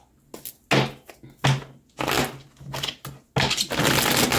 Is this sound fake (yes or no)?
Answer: no